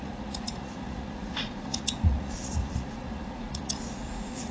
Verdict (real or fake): fake